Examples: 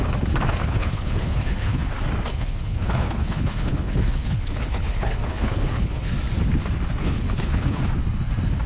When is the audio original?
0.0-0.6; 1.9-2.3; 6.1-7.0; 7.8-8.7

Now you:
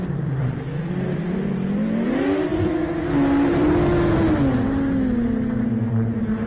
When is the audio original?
2.5-5.6

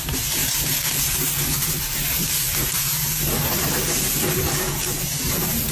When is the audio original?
0.0-0.4; 3.8-5.7

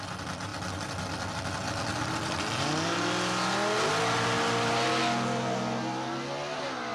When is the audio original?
0.0-6.9

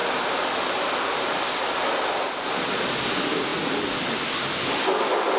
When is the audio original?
0.0-5.4

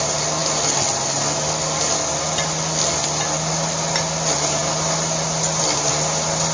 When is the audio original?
0.0-6.5